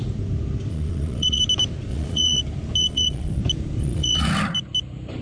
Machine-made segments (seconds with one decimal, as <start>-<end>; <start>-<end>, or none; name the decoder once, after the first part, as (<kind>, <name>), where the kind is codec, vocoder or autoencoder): 0.7-1.4 (vocoder, Vocos); 1.9-2.4; 2.8-3.4; 3.8-4.3